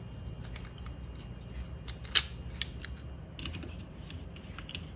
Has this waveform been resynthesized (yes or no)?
no